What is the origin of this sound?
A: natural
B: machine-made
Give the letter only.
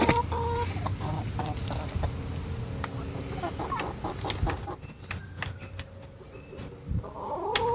A